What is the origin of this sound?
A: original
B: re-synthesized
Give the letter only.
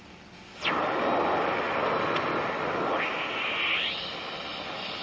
A